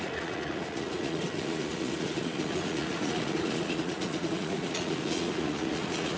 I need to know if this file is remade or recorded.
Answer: remade